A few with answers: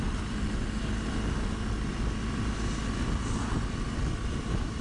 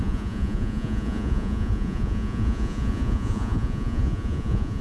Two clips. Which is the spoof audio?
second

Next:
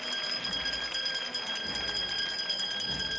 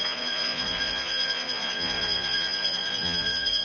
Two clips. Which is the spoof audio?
second